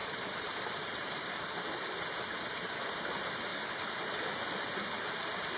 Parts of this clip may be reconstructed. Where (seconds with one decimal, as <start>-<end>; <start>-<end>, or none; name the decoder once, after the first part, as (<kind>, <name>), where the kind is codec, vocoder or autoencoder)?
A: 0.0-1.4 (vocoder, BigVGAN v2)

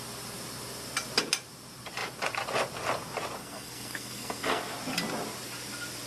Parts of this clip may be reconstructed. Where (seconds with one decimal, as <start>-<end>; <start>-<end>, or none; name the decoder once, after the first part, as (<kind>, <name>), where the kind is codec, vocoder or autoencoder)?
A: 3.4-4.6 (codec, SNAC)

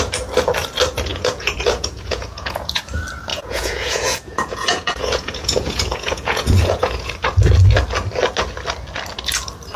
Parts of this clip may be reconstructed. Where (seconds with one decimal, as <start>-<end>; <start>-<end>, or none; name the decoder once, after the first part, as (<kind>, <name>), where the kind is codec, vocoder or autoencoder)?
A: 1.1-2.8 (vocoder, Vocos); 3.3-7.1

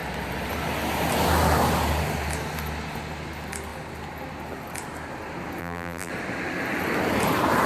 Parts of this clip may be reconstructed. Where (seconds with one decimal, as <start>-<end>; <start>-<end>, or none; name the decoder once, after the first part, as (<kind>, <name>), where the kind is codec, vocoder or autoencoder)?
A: 5.6-6.1 (vocoder, BigVGAN v2)

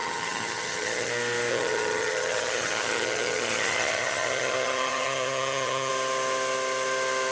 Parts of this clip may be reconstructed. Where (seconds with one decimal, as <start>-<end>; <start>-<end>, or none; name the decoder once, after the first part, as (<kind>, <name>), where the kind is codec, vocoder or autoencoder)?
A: 0.0-1.1 (vocoder, HiFi-GAN); 1.5-5.9